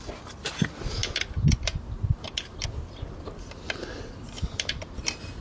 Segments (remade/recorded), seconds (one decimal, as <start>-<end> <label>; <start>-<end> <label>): 0.0-5.4 recorded